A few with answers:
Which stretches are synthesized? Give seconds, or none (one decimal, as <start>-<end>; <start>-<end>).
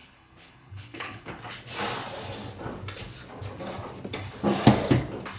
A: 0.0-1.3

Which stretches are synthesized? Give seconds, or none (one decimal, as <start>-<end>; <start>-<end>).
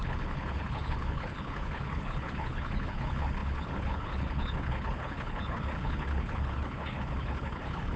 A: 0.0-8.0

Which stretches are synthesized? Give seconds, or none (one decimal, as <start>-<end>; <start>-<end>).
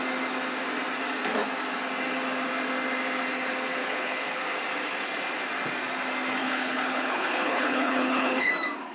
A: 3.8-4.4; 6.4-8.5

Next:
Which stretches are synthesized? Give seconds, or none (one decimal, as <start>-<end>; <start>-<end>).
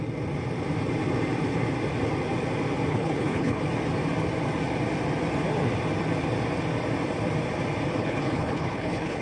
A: 2.9-3.6; 8.0-9.2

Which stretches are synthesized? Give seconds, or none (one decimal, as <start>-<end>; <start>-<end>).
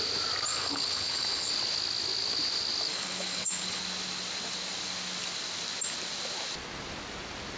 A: 0.5-1.5; 2.9-3.8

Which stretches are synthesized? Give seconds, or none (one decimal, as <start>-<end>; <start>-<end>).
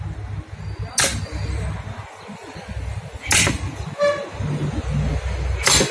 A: none